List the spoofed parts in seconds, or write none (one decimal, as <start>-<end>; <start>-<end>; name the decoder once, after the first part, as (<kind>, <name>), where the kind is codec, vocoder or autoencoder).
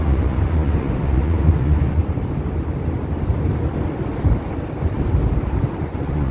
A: 0.0-2.0 (vocoder, Vocos); 5.8-6.3